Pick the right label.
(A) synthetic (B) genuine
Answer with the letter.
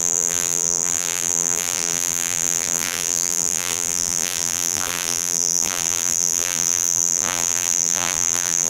A